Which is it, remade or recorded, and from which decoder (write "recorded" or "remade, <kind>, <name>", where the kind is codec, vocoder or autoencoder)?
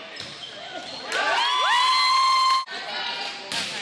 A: recorded